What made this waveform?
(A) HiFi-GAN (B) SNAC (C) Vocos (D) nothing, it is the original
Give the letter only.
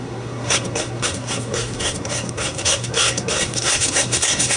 B